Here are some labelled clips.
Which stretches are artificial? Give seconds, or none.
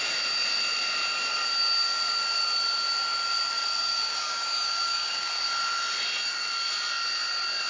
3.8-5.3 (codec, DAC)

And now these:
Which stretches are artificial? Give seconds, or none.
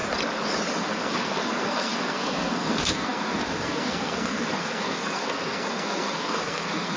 0.8-7.0 (codec, SNAC)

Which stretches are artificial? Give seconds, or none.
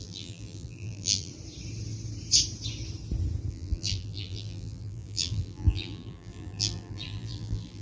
0.0-1.3 (vocoder, BigVGAN v2); 3.5-7.8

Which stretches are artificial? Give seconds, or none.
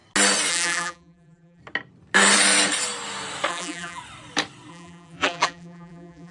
0.5-1.6 (vocoder, BigVGAN v2); 3.5-4.0; 4.7-6.3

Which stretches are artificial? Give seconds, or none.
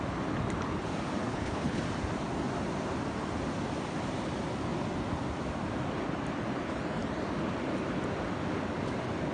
1.3-1.8 (codec, HILCodec)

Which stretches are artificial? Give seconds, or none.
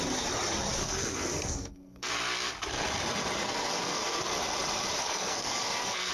0.8-2.1 (codec, SNAC); 3.4-4.3; 5.0-6.1